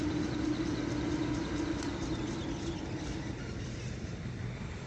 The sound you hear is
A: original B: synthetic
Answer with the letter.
A